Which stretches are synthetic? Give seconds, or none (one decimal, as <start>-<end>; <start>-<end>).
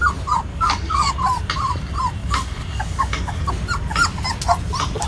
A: 0.5-1.1; 2.2-3.5